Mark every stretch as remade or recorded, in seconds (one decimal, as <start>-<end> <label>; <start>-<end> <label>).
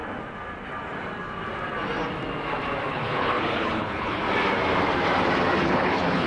0.0-2.9 recorded; 2.9-4.2 remade; 4.2-5.6 recorded; 5.6-6.3 remade